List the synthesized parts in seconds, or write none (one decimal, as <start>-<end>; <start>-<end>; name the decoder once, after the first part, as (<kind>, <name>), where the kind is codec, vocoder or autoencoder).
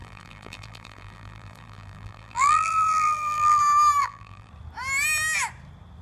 0.0-3.6 (vocoder, BigVGAN v2); 4.0-4.5